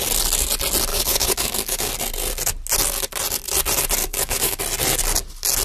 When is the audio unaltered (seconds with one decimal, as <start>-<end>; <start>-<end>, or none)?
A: 0.0-0.9; 1.9-4.0; 4.6-5.6